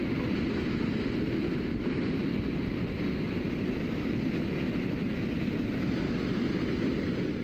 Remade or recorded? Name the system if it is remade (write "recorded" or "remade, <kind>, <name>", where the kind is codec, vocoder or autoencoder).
recorded